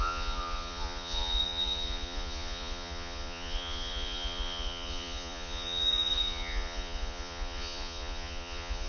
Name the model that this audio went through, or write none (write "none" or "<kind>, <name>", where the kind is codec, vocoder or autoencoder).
vocoder, Vocos